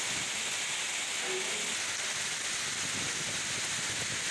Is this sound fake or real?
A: real